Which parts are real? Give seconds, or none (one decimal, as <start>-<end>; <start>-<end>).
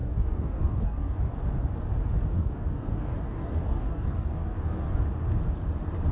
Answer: 1.2-2.3; 5.0-6.1